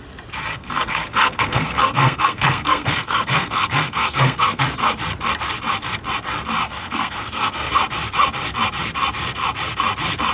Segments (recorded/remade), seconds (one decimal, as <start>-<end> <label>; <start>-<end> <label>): 0.0-0.5 recorded; 0.5-4.6 remade; 4.6-6.6 recorded; 6.6-7.7 remade; 7.7-10.3 recorded